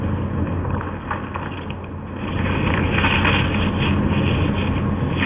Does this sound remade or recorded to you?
recorded